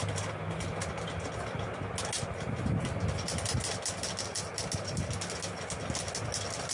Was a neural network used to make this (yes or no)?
no